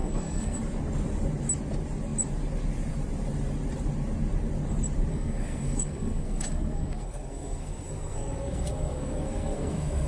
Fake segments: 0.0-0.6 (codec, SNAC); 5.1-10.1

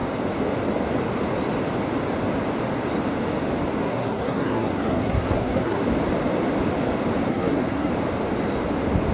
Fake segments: 3.8-5.8 (codec, SNAC); 7.3-7.9

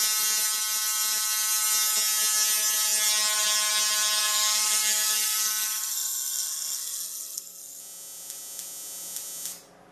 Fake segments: 4.2-7.8 (codec, SNAC)

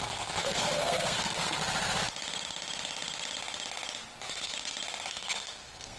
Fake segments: 0.0-1.6 (codec, SNAC); 4.1-4.5; 5.1-6.0

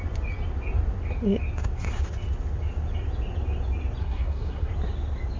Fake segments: 4.0-4.7 (codec, SNAC)